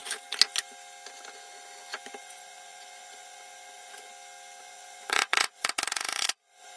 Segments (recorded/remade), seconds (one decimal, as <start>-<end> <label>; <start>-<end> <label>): 0.0-2.2 recorded; 2.2-4.1 remade; 4.1-4.6 recorded; 4.6-6.8 remade